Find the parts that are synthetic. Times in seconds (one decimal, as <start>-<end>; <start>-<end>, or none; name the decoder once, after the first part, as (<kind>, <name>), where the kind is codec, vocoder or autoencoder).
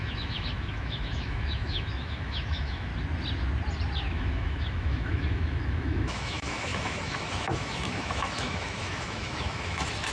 0.0-2.9 (autoencoder, DAC-VAE); 4.1-10.1